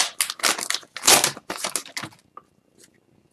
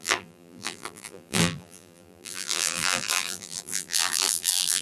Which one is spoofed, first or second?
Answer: second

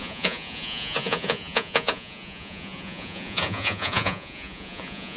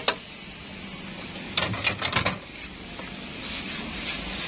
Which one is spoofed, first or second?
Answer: first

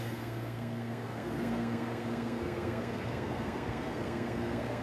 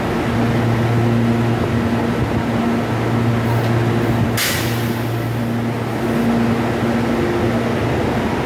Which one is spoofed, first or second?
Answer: first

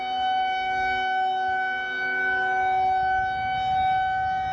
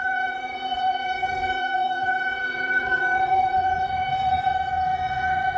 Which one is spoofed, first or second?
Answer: second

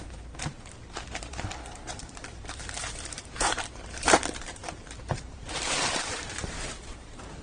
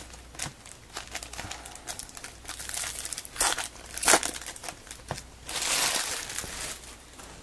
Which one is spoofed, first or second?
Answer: first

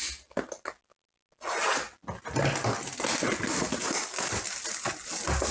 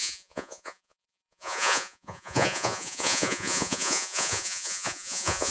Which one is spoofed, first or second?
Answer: second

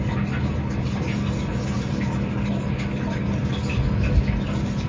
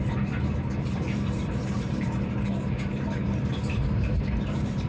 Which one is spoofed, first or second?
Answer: second